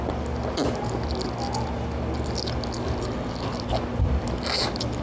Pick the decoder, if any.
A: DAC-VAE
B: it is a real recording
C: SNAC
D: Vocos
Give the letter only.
B